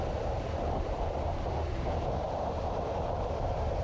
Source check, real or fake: fake